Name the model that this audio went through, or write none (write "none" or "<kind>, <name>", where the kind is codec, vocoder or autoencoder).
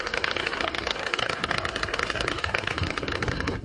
codec, SNAC